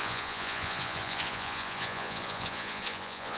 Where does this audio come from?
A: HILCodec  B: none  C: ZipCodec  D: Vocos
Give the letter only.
D